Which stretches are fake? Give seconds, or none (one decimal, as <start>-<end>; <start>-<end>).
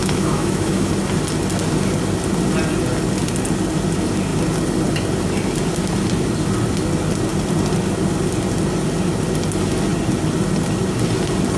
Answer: 0.0-0.9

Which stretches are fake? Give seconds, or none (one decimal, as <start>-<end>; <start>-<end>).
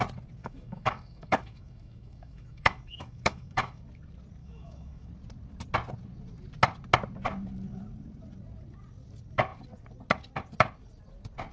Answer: 0.4-3.8; 4.4-5.1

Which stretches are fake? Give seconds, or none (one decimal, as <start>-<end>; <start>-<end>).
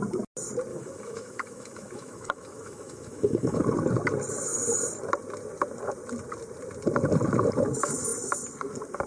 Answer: 0.7-3.6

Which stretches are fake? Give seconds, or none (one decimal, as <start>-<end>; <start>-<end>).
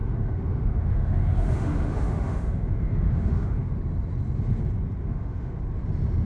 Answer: 0.0-3.7; 5.0-5.6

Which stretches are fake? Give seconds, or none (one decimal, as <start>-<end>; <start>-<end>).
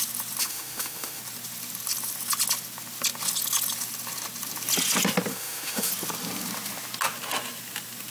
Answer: 0.4-1.2; 5.3-5.9